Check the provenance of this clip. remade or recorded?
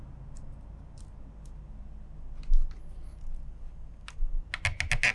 recorded